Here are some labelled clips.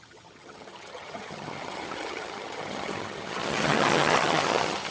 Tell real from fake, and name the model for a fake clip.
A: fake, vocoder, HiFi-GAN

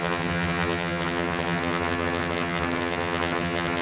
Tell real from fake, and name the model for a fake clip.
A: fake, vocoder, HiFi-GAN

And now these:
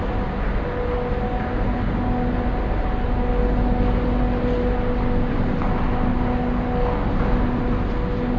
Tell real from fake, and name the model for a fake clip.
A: real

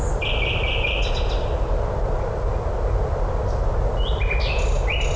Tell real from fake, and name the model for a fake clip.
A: real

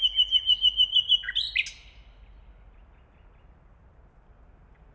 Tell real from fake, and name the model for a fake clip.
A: real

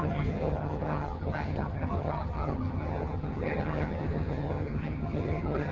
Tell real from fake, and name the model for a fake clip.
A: fake, vocoder, HiFi-GAN